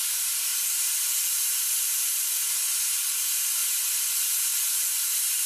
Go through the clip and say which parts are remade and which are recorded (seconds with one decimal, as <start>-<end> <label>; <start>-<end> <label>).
0.0-5.5 recorded